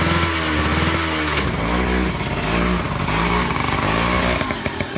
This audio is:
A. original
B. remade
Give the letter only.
A